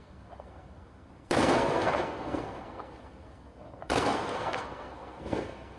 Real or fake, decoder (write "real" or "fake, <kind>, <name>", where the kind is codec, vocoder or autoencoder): fake, codec, SNAC